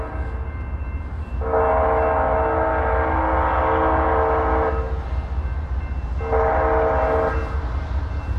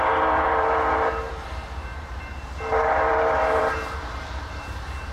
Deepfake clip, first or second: second